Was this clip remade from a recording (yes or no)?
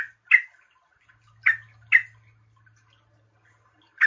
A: no